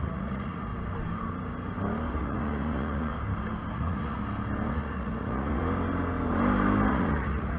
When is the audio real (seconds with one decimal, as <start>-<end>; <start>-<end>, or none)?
0.7-2.1; 3.1-3.7; 4.2-4.7; 5.6-6.9